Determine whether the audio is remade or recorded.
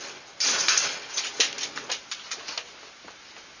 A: recorded